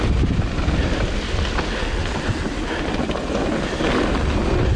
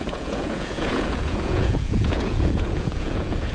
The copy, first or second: second